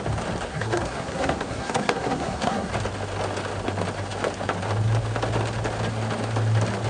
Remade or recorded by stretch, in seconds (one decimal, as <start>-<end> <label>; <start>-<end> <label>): 0.0-0.5 recorded; 0.5-2.7 remade; 2.7-6.9 recorded